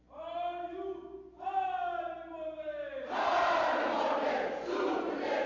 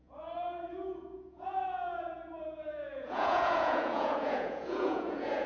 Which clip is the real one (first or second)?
first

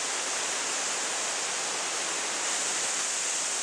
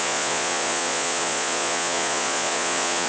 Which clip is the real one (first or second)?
first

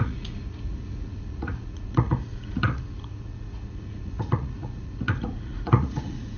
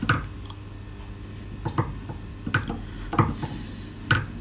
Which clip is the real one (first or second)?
second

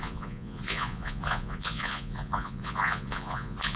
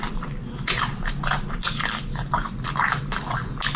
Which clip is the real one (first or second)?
second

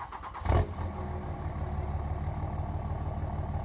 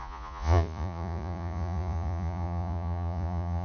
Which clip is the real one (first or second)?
first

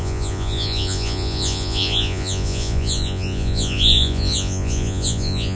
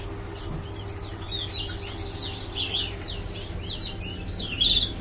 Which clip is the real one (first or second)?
second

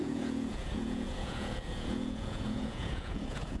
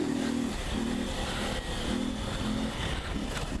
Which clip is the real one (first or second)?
second